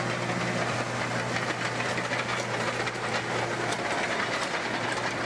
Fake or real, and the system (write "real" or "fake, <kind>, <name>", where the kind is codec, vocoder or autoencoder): real